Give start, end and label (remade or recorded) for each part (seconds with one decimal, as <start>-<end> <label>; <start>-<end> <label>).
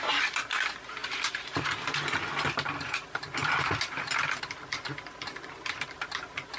0.0-3.4 recorded; 3.4-4.0 remade; 4.0-6.6 recorded